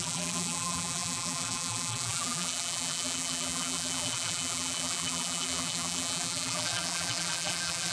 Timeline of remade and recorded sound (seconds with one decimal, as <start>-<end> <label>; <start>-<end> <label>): 0.0-7.9 remade